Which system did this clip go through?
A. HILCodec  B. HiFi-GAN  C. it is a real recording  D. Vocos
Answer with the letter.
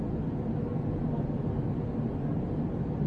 C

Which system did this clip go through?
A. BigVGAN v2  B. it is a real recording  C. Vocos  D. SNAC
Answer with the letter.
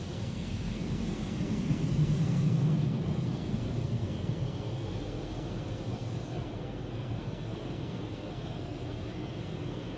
D